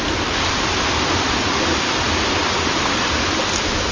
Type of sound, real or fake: real